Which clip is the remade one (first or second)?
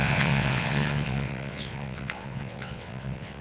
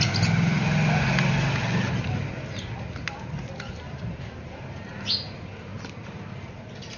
first